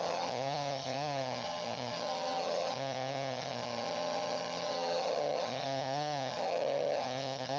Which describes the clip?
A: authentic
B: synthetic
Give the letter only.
B